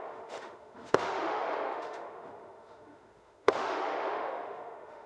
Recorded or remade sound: remade